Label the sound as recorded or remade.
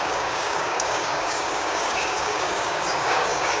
remade